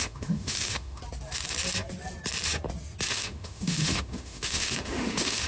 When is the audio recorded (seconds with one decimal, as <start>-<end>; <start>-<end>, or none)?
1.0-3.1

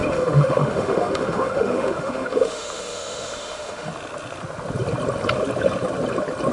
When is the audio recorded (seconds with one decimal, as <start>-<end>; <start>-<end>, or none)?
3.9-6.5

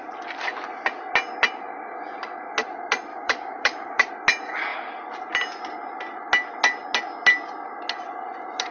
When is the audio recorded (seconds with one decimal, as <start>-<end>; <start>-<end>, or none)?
0.0-3.1; 4.1-8.7

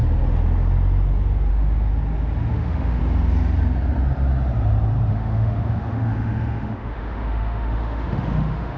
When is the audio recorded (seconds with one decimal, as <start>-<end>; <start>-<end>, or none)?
0.0-1.5; 1.9-2.5; 3.0-5.1

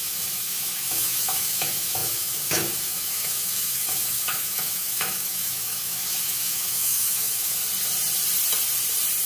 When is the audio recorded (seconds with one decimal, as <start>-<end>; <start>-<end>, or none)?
7.6-9.3